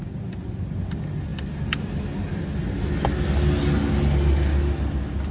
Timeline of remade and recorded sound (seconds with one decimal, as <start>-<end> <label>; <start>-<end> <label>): 0.0-5.3 recorded